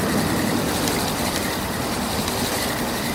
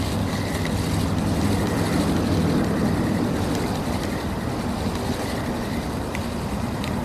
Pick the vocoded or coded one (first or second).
first